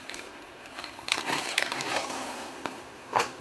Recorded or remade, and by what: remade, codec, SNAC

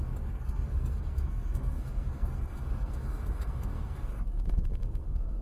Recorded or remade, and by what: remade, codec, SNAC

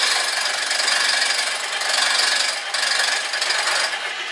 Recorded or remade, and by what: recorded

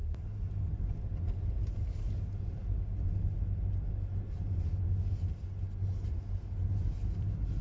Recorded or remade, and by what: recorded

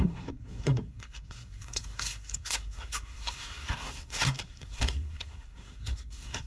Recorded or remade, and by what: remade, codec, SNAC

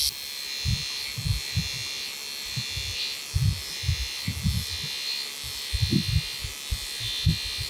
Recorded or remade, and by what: recorded